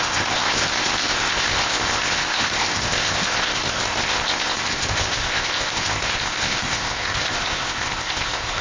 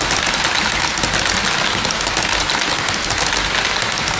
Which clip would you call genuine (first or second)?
second